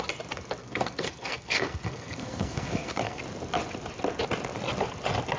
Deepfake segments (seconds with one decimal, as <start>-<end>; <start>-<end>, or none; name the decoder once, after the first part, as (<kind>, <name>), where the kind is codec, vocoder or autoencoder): 0.6-3.2 (codec, SNAC)